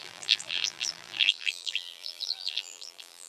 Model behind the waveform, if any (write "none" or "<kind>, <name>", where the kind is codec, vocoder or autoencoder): vocoder, BigVGAN v2